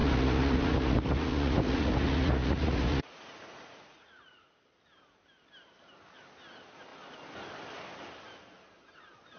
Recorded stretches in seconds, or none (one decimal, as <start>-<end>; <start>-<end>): 4.5-9.4